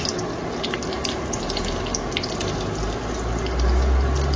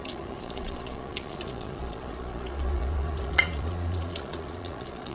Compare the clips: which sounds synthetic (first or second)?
second